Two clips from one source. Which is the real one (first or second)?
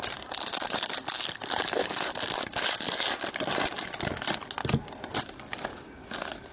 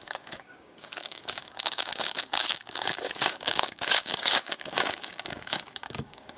first